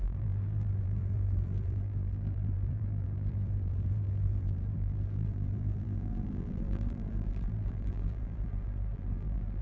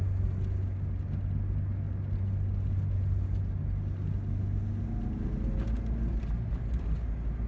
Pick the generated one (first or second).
first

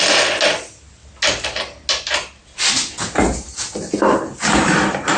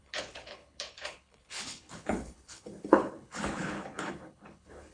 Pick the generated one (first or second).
second